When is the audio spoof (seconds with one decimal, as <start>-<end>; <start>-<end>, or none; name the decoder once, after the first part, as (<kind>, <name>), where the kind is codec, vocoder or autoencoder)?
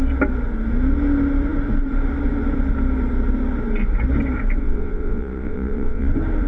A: 4.6-6.1 (vocoder, WaveNeXt)